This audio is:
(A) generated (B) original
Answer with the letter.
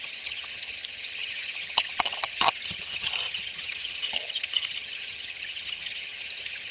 A